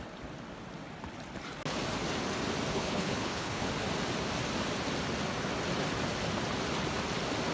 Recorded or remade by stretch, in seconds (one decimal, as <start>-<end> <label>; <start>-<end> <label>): 0.0-2.7 recorded; 2.7-3.7 remade; 3.7-7.5 recorded